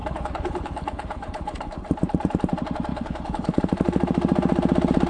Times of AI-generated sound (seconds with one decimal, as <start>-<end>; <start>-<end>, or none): 0.0-1.7; 2.9-3.6